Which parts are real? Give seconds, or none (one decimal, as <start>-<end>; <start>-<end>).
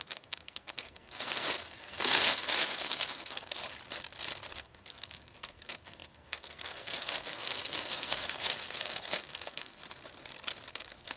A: 3.6-4.5; 9.8-10.7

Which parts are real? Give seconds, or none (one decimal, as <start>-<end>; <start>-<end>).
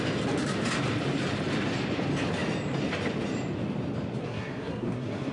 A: 0.0-4.2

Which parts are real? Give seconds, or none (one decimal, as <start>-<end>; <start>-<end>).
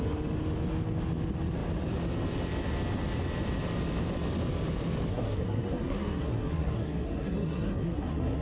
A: 0.0-5.1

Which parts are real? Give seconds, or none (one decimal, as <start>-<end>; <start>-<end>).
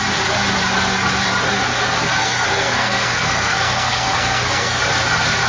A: 0.0-2.2; 4.8-5.5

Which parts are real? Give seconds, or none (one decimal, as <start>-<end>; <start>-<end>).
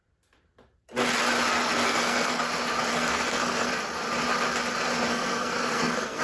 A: 0.0-1.6; 2.4-2.9; 3.7-5.1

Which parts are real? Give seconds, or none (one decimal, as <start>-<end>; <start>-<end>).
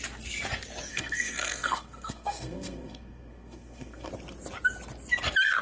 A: 0.0-0.9; 4.1-5.6